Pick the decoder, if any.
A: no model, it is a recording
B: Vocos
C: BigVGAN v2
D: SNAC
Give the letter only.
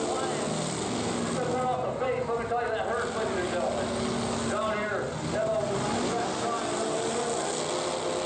A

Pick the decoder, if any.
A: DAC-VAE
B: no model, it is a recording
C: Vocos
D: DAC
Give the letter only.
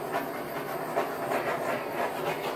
B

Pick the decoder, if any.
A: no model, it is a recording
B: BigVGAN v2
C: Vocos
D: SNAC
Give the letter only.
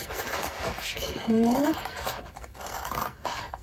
D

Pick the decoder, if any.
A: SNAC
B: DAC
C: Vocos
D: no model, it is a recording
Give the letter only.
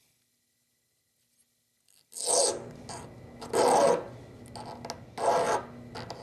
D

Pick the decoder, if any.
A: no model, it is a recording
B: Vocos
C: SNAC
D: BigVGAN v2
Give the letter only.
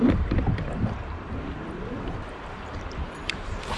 D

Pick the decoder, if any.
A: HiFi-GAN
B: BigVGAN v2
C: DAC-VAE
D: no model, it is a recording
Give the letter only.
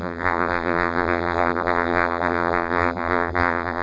B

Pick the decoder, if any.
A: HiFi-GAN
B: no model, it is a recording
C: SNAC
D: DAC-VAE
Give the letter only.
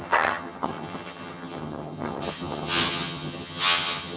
A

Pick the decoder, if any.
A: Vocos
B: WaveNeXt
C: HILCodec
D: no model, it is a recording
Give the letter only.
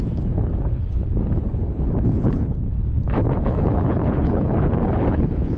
C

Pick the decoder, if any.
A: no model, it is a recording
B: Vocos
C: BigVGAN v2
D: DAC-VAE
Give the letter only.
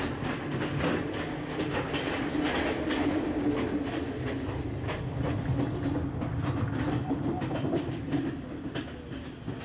A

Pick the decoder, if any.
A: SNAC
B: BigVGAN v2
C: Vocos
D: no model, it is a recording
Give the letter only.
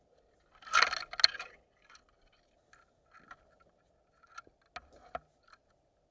D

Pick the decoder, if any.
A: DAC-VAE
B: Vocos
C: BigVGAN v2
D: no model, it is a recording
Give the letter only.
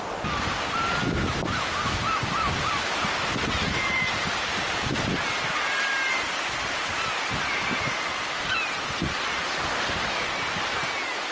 C